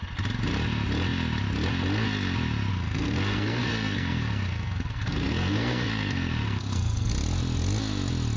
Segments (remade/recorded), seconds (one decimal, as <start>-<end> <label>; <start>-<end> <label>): 0.0-2.7 recorded; 2.7-7.1 remade; 7.1-8.4 recorded